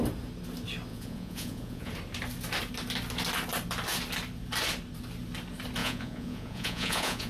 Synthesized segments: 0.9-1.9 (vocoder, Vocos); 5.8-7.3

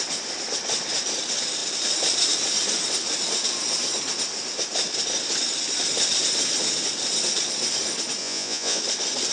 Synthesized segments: 8.2-8.8 (vocoder, Vocos)

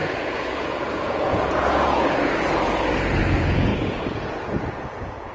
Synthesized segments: 0.0-5.3 (vocoder, Vocos)

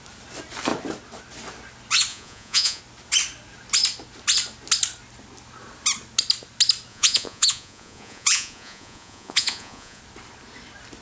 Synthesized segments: 2.1-2.8 (vocoder, Vocos); 6.9-10.0

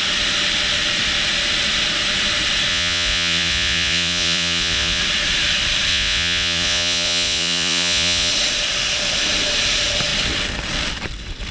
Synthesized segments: 2.7-5.0 (vocoder, Vocos); 5.9-8.3

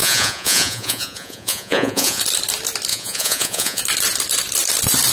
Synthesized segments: 0.0-2.2 (vocoder, Vocos); 2.9-3.8

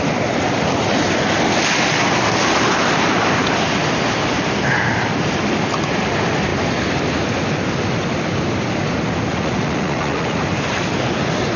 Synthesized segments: 9.3-10.4 (vocoder, Vocos)